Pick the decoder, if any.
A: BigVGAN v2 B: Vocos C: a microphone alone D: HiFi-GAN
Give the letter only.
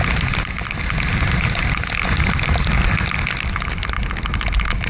C